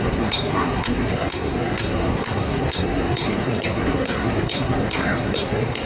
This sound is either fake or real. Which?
fake